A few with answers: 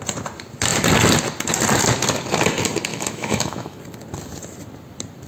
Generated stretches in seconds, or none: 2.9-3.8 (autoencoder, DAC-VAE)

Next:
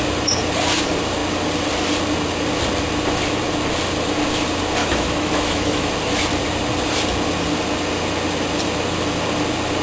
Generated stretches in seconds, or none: 4.8-5.9 (autoencoder, DAC-VAE)

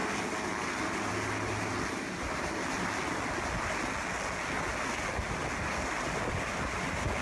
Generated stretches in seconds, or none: none

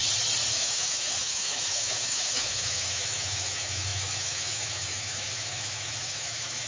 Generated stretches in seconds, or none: 0.5-6.7 (autoencoder, DAC-VAE)

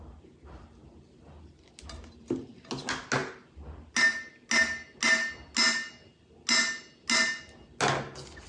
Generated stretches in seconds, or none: none

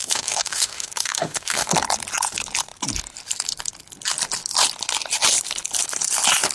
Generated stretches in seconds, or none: 0.0-1.7 (autoencoder, DAC-VAE)

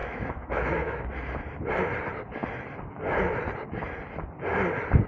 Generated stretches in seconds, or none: 0.0-1.0 (autoencoder, DAC-VAE)

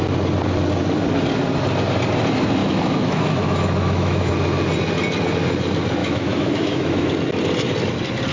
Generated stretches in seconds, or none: 2.6-4.3 (autoencoder, DAC-VAE); 6.0-7.1